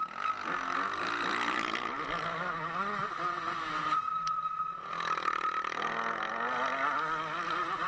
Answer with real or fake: real